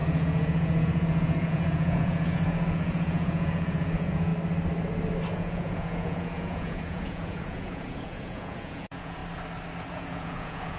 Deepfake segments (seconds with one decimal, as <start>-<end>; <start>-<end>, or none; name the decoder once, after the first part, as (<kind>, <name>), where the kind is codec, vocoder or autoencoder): 0.0-4.3 (vocoder, Vocos); 5.3-9.2; 9.9-10.8